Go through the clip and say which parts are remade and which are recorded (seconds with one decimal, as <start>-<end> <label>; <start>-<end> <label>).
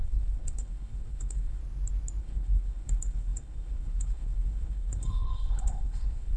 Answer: 0.0-1.6 remade; 1.6-2.2 recorded; 2.2-6.4 remade